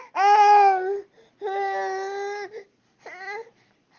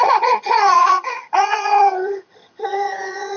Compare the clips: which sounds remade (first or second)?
second